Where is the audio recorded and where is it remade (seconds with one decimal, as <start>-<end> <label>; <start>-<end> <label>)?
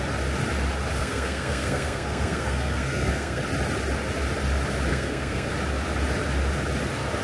0.0-1.0 recorded; 1.0-3.4 remade; 3.4-4.9 recorded; 4.9-5.5 remade; 5.5-7.2 recorded